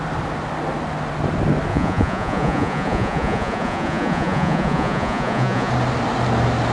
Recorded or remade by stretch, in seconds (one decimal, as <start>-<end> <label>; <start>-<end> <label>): 0.0-1.7 recorded; 1.7-5.7 remade; 5.7-6.7 recorded

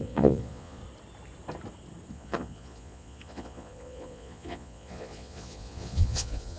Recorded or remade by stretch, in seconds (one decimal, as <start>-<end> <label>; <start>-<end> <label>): 0.0-0.8 remade; 0.8-2.1 recorded; 2.1-6.6 remade

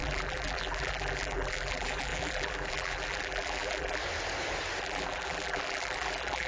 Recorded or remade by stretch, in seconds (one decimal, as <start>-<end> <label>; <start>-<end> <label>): 0.0-4.0 remade; 4.0-4.8 recorded; 4.8-6.5 remade